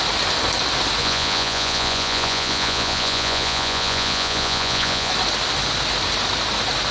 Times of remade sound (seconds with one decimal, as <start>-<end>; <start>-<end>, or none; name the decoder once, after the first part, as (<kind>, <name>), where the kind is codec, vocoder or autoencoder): 1.0-5.1 (vocoder, Vocos)